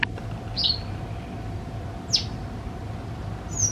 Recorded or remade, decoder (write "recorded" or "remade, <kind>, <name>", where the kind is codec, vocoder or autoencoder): recorded